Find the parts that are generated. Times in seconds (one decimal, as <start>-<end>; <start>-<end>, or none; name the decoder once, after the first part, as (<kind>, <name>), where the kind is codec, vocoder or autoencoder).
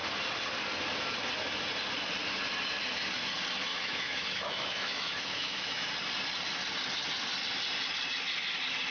3.7-5.9 (autoencoder, DAC-VAE)